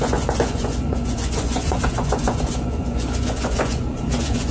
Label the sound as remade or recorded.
remade